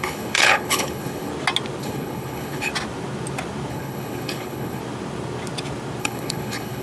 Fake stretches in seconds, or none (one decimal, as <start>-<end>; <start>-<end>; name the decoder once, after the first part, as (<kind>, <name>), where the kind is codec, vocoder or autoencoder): 0.0-1.3 (codec, HILCodec); 1.8-2.7; 3.7-4.8; 6.0-6.8